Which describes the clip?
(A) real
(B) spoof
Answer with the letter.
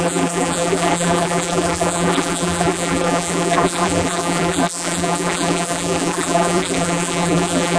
B